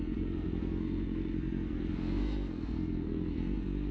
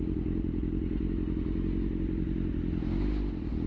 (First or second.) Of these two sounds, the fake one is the first